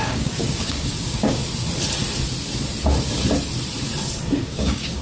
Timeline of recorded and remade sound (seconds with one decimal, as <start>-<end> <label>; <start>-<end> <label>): 0.0-1.4 remade; 1.4-4.4 recorded; 4.4-5.0 remade